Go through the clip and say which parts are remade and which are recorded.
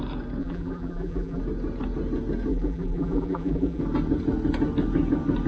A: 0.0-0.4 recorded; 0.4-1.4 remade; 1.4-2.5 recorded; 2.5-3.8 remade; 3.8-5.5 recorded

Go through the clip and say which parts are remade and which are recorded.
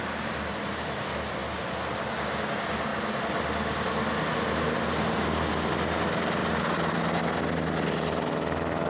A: 0.0-6.4 recorded; 6.4-6.9 remade; 6.9-8.9 recorded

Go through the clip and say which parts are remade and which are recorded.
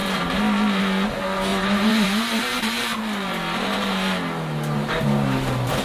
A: 0.0-1.5 recorded; 1.5-3.0 remade; 3.0-5.8 recorded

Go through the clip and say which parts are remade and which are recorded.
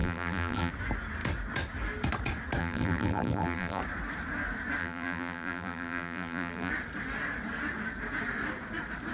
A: 0.0-0.7 remade; 0.7-2.6 recorded; 2.6-3.8 remade; 3.8-4.8 recorded; 4.8-6.7 remade; 6.7-9.1 recorded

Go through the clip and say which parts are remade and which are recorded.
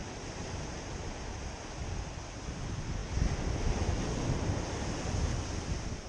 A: 0.0-6.1 recorded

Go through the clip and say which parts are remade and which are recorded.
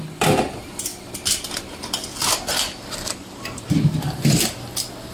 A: 0.0-5.1 recorded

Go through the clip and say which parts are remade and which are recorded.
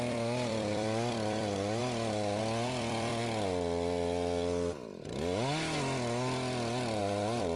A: 0.0-1.8 remade; 1.8-2.4 recorded; 2.4-3.1 remade; 3.1-7.0 recorded; 7.0-7.6 remade